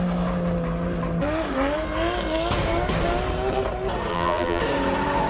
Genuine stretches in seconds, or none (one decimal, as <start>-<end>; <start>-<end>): 0.0-4.1; 4.6-5.3